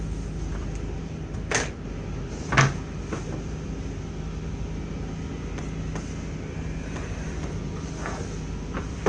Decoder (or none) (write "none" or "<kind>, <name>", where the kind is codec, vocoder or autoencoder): none